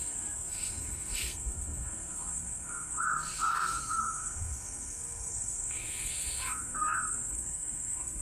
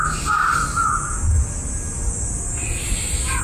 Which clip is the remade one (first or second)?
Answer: first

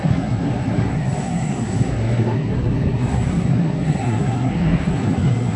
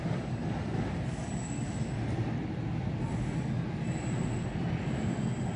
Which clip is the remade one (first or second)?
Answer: first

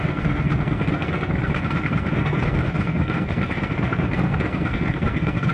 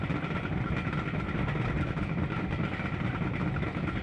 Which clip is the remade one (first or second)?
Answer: first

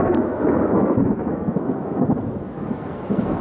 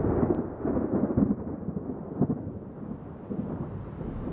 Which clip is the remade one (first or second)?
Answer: first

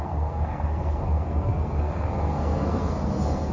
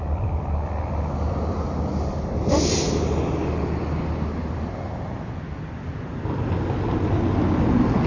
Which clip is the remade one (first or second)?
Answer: first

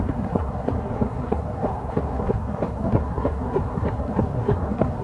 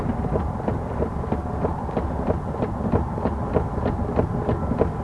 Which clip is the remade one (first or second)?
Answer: first